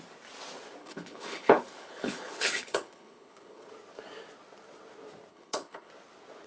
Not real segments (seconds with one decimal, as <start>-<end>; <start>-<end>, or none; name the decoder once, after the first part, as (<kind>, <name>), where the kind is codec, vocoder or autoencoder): 0.8-3.7 (codec, HILCodec); 5.3-5.9